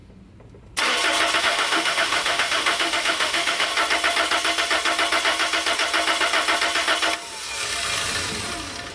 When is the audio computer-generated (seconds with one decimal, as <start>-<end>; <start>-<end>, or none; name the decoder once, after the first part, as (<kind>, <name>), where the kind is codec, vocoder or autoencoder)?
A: 1.4-3.7 (autoencoder, DAC-VAE)